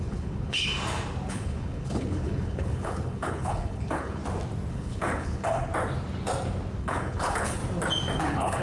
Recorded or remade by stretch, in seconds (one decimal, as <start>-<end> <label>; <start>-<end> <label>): 0.0-0.7 remade; 0.7-1.3 recorded; 1.3-4.2 remade; 4.2-4.7 recorded; 4.7-5.7 remade; 5.7-6.8 recorded; 6.8-7.6 remade; 7.6-8.2 recorded; 8.2-8.6 remade